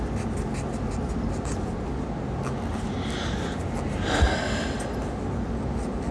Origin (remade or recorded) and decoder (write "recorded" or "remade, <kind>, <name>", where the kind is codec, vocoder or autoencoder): recorded